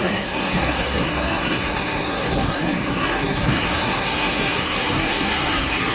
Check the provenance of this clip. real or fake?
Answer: fake